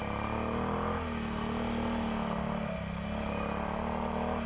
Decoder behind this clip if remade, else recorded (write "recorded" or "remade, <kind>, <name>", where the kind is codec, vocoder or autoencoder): recorded